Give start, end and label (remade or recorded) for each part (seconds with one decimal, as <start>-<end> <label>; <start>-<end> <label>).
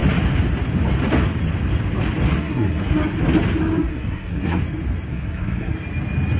0.0-2.3 recorded; 2.3-2.9 remade; 2.9-3.9 recorded; 3.9-4.6 remade; 4.6-5.1 recorded; 5.1-5.7 remade; 5.7-6.4 recorded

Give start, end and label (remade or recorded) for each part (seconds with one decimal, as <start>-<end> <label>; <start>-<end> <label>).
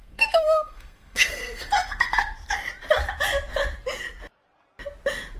0.0-2.2 remade; 2.2-5.4 recorded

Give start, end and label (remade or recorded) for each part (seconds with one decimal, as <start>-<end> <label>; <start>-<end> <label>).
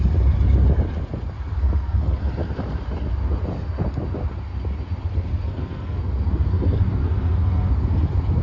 0.0-1.6 recorded; 1.6-2.2 remade; 2.2-5.3 recorded; 5.3-6.0 remade; 6.0-7.0 recorded; 7.0-7.7 remade; 7.7-8.4 recorded